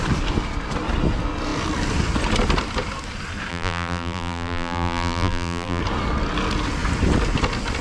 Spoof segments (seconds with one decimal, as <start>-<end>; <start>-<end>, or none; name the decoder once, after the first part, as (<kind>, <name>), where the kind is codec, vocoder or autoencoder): 3.5-5.8 (vocoder, BigVGAN v2)